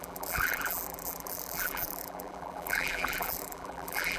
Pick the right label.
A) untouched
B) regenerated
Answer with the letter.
B